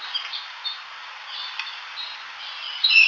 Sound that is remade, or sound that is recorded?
remade